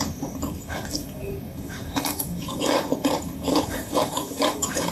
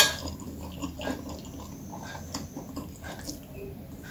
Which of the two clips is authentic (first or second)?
second